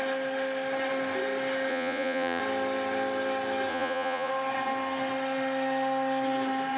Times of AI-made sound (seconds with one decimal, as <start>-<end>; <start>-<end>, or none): 1.7-2.4; 3.7-4.3